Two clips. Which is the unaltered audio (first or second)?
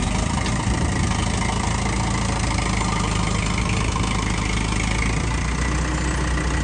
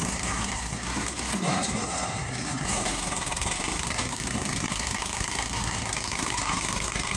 first